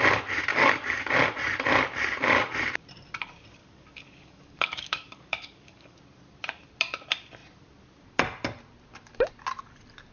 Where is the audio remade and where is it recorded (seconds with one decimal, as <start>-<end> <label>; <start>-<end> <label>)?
0.0-0.5 recorded; 0.5-1.1 remade; 1.1-3.6 recorded; 3.6-6.0 remade; 6.0-10.1 recorded

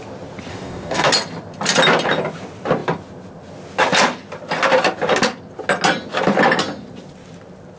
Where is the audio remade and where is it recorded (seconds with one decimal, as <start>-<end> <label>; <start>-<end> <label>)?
0.0-0.5 recorded; 0.5-1.1 remade; 1.1-7.8 recorded